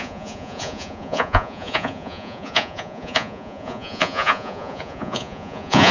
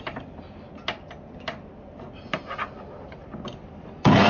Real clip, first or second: second